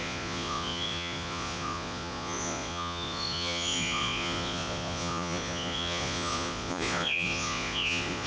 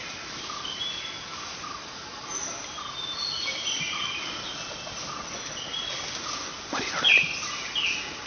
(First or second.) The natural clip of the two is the second